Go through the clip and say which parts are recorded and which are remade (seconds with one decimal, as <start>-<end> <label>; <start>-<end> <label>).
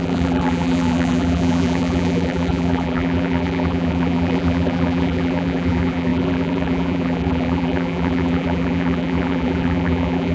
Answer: 0.0-10.3 remade